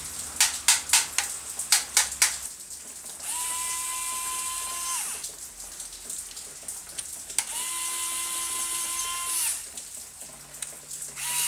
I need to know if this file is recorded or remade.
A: recorded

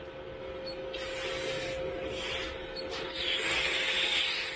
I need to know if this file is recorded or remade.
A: recorded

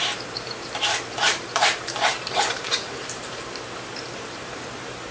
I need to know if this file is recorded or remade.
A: remade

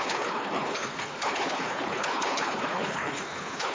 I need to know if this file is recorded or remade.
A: remade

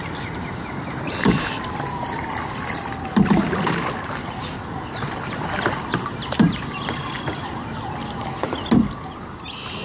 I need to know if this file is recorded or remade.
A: recorded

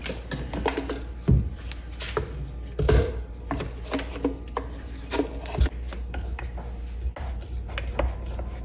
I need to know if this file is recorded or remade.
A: recorded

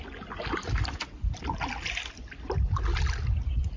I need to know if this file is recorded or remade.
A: recorded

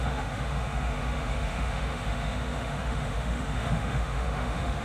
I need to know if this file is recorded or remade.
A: remade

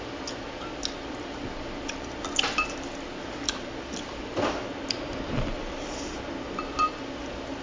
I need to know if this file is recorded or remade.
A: recorded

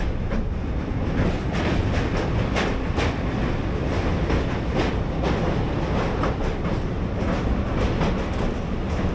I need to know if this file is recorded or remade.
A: recorded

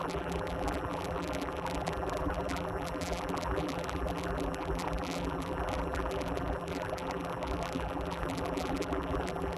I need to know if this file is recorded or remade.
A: remade